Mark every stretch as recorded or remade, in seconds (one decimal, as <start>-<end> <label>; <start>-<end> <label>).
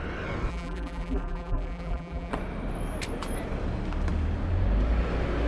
0.0-0.5 recorded; 0.5-2.3 remade; 2.3-5.5 recorded